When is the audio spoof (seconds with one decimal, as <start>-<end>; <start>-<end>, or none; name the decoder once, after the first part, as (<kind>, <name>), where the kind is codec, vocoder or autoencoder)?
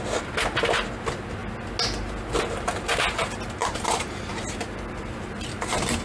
3.6-4.5 (vocoder, BigVGAN v2)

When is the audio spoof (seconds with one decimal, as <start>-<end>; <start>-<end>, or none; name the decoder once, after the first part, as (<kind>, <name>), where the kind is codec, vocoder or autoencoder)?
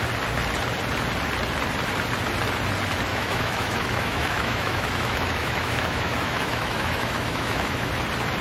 3.1-7.9 (autoencoder, DAC-VAE)